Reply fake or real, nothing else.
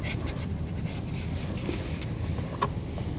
real